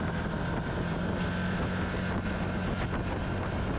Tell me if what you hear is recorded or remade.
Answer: recorded